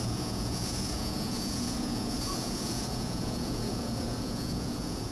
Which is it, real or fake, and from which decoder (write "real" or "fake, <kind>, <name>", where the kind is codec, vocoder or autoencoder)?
fake, vocoder, Vocos